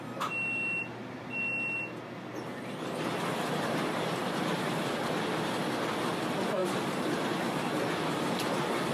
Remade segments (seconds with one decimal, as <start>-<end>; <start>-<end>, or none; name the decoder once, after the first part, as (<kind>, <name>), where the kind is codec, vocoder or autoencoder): 4.2-5.1 (vocoder, BigVGAN v2)